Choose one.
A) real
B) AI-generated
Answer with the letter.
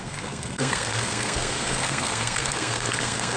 B